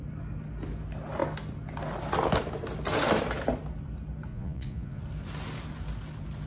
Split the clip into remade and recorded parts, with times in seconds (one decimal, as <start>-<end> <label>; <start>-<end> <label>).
0.0-4.3 recorded; 4.3-5.0 remade; 5.0-6.5 recorded